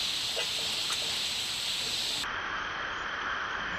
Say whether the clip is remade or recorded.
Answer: remade